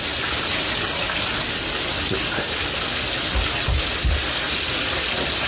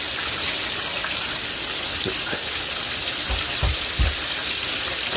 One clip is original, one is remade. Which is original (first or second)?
first